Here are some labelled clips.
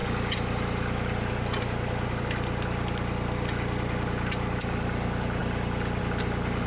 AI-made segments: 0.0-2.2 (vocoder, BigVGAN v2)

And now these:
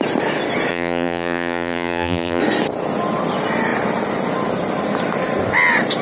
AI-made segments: 0.7-2.4 (vocoder, BigVGAN v2)

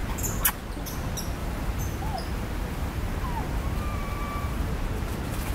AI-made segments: 0.0-0.5 (vocoder, BigVGAN v2); 1.4-4.7

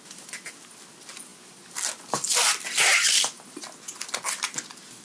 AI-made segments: 1.3-3.4 (vocoder, BigVGAN v2)

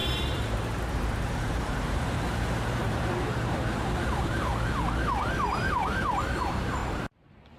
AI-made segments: 0.0-4.5 (vocoder, BigVGAN v2); 5.3-6.8

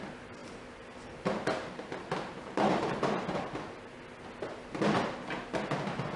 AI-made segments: 0.4-1.8 (vocoder, BigVGAN v2)